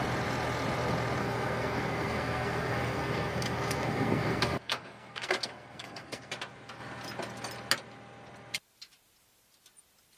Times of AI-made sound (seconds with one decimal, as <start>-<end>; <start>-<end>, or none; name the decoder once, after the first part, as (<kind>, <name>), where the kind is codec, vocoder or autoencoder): 1.2-6.3 (codec, SNAC)